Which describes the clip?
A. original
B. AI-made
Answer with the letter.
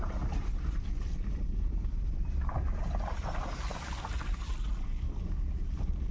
A